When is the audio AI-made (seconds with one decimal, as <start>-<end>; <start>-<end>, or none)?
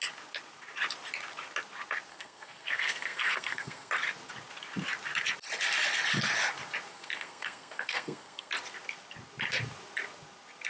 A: 2.1-3.9; 6.9-8.5